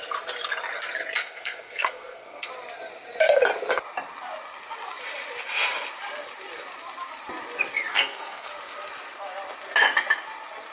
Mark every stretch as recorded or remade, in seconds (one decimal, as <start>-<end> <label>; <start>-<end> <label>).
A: 0.0-1.2 recorded; 1.2-2.5 remade; 2.5-7.9 recorded; 7.9-8.5 remade; 8.5-10.7 recorded